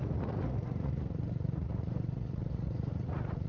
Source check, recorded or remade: remade